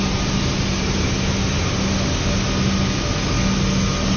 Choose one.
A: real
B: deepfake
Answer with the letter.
A